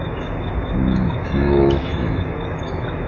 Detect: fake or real fake